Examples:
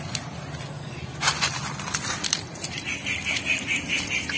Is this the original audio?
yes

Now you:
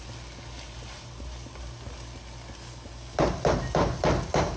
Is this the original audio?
yes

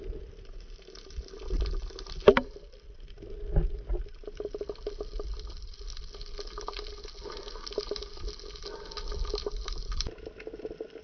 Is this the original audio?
yes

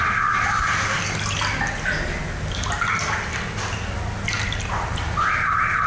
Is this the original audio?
yes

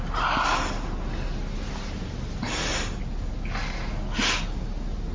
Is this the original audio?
yes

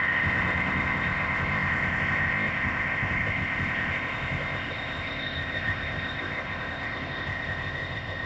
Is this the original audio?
no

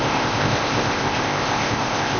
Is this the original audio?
no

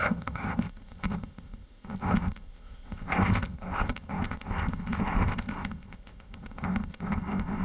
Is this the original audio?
no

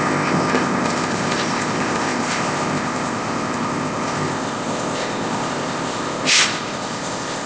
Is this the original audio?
no